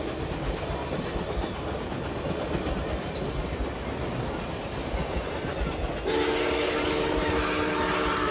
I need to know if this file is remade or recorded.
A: recorded